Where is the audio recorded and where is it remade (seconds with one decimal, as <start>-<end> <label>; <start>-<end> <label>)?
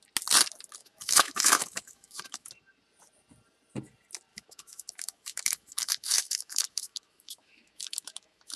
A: 0.0-0.8 recorded; 0.8-2.5 remade; 2.5-4.3 recorded; 4.3-8.6 remade